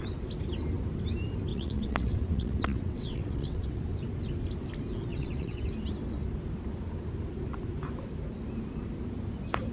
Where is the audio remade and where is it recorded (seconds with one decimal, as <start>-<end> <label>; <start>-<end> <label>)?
0.0-1.5 recorded; 1.5-3.8 remade; 3.8-5.1 recorded; 5.1-5.6 remade; 5.6-9.7 recorded